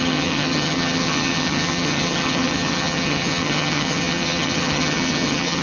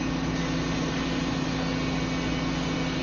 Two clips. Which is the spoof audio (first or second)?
first